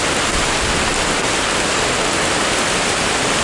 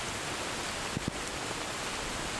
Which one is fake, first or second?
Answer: second